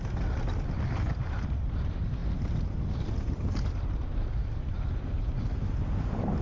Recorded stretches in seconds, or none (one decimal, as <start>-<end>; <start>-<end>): 0.0-6.4